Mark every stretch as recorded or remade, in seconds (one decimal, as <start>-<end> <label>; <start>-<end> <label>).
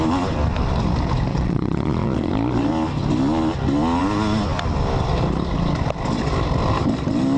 0.0-1.3 recorded; 1.3-2.3 remade; 2.3-7.4 recorded